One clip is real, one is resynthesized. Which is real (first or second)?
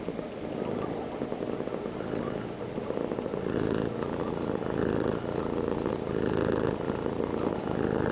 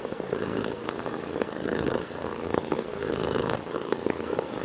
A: first